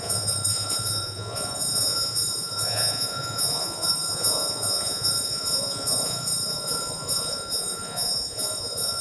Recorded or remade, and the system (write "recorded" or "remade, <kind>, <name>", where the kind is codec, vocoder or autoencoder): remade, vocoder, Vocos